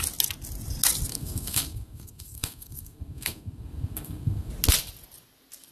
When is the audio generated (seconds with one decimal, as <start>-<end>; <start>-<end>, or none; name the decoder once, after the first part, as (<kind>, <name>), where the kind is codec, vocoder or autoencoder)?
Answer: 1.1-4.5 (codec, SNAC)